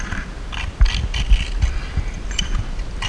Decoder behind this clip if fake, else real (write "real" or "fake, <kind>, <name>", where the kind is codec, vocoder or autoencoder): real